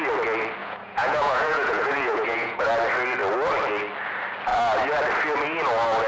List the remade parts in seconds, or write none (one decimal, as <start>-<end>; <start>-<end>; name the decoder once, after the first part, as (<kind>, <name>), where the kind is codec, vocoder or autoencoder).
0.6-2.7 (vocoder, Vocos)